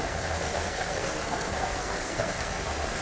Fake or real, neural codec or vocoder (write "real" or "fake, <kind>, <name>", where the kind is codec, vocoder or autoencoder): fake, codec, SNAC